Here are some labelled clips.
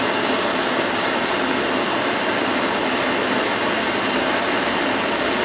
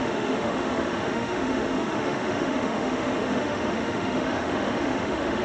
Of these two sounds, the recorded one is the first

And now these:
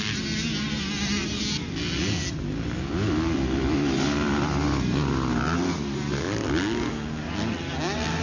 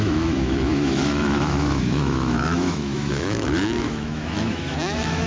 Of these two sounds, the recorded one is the first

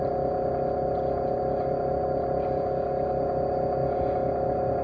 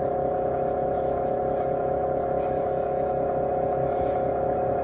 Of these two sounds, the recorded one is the first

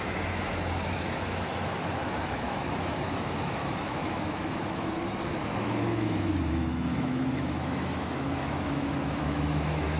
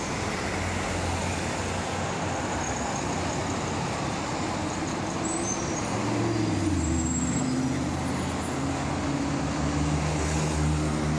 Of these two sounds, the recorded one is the second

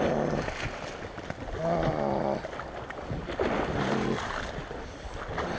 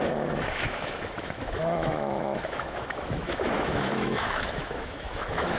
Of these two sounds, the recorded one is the first